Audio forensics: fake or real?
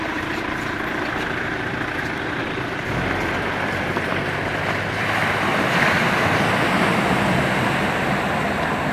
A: fake